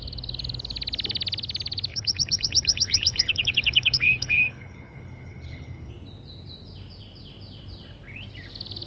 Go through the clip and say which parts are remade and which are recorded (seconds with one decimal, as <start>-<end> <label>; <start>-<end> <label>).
0.0-1.9 recorded; 1.9-5.9 remade; 5.9-8.9 recorded